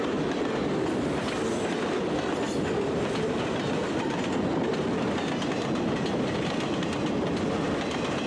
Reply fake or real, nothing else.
real